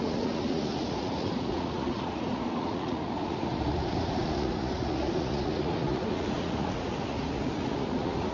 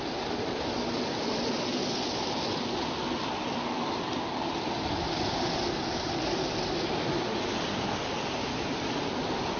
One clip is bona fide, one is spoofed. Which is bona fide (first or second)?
second